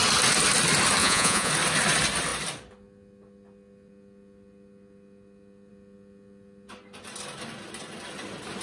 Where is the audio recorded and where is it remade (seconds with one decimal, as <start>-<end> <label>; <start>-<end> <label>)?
0.0-1.0 recorded; 1.0-1.5 remade; 1.5-8.6 recorded